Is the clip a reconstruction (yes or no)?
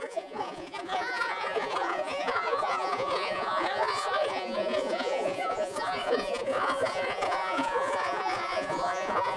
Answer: yes